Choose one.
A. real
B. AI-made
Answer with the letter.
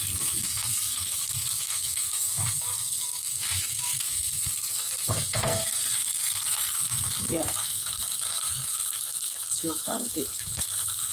B